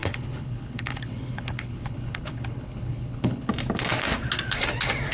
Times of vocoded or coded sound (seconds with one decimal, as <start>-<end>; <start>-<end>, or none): 0.0-3.5